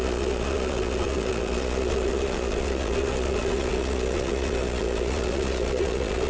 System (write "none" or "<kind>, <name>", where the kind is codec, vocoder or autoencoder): vocoder, Vocos